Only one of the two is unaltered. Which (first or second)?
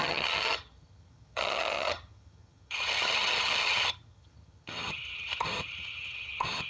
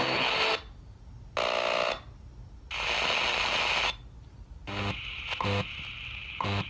second